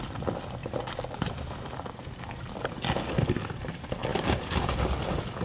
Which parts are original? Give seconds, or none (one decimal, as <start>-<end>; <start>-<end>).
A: 0.0-0.6; 2.0-4.1; 4.8-5.4

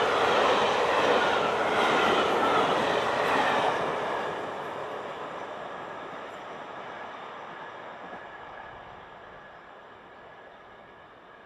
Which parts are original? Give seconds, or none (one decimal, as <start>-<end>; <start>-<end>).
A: 0.0-11.5

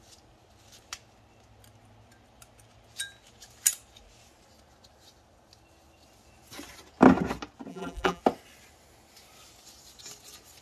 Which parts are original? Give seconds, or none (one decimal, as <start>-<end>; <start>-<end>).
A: 0.0-7.7; 8.2-10.6

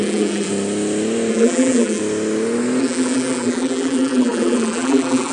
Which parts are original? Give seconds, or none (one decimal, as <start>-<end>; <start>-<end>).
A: 0.5-1.3; 2.0-2.8